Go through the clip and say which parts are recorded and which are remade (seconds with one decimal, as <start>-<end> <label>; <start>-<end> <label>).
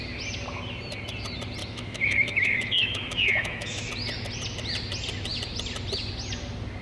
0.0-1.6 recorded; 1.6-3.9 remade; 3.9-6.8 recorded